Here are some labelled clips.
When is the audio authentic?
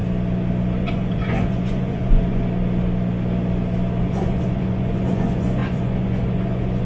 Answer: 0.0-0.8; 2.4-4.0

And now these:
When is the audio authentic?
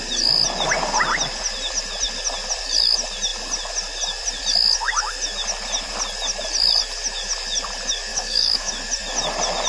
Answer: 0.0-8.1; 8.7-9.7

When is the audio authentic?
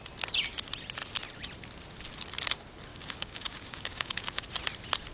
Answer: 0.0-2.9; 4.4-5.1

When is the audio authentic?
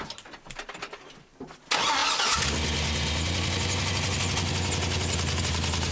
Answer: 0.0-5.9